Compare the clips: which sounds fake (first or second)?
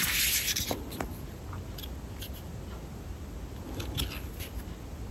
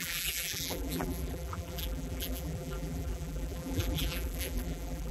second